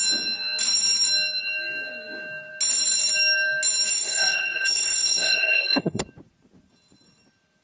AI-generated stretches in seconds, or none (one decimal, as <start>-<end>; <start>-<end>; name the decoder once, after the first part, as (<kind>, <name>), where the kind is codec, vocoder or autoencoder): 3.9-6.0 (codec, SNAC)